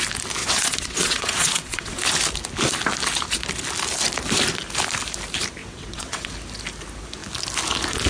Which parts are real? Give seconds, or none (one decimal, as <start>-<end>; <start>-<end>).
0.0-0.4; 2.0-5.6; 6.3-8.1